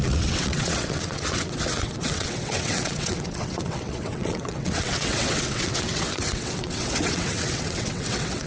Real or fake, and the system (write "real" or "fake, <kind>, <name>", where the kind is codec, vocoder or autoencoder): fake, vocoder, WaveNeXt